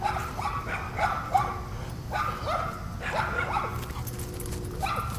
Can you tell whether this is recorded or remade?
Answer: recorded